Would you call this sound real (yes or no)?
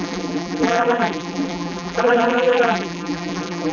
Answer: no